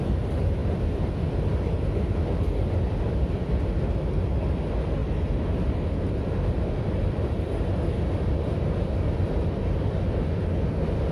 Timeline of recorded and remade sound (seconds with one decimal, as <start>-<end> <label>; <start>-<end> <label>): 0.0-11.1 recorded